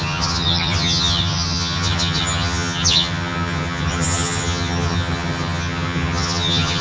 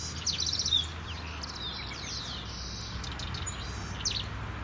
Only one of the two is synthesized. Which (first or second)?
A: first